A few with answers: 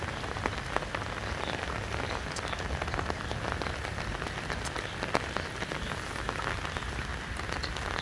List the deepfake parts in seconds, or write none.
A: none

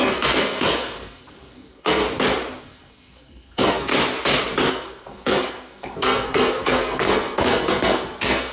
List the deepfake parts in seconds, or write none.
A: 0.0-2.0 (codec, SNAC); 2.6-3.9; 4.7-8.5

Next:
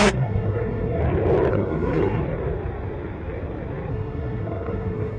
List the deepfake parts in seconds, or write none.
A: 0.0-1.0 (codec, SNAC); 1.5-2.2; 3.9-5.2

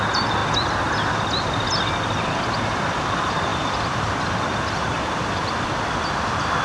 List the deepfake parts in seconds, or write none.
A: none

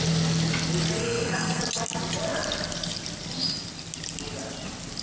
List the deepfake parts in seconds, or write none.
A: 1.0-1.6 (codec, SNAC)

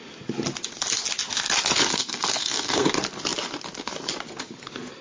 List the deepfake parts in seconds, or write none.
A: 1.8-2.9 (codec, SNAC)

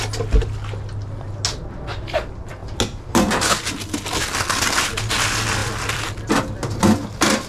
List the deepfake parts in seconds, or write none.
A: none